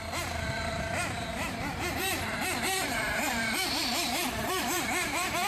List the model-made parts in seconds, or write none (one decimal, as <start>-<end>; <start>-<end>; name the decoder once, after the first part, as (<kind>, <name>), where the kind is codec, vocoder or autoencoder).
0.0-5.5 (vocoder, BigVGAN v2)